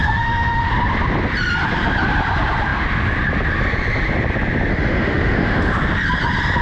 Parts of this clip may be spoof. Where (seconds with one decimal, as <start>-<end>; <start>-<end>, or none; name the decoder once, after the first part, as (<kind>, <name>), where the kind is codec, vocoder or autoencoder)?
0.0-0.7 (autoencoder, DAC-VAE); 4.7-5.7